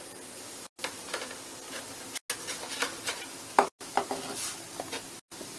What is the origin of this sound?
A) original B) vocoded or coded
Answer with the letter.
A